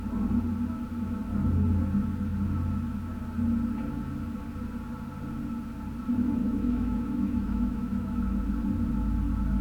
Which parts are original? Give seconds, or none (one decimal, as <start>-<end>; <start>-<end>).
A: 0.0-6.4; 8.4-9.6